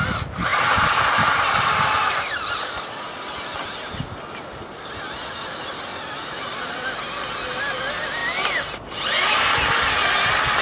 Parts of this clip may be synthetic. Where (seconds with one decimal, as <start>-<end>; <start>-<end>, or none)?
0.5-4.8; 5.9-7.3